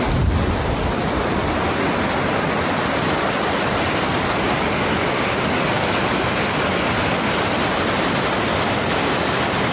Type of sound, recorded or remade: recorded